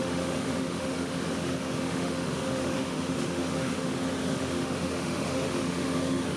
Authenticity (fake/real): fake